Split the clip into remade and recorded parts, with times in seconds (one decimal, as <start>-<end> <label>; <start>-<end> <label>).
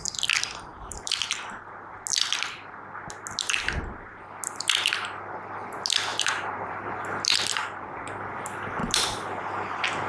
0.0-0.7 recorded; 0.7-1.3 remade; 1.3-6.1 recorded; 6.1-6.9 remade; 6.9-10.1 recorded